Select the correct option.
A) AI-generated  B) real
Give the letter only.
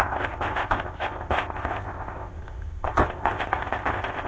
A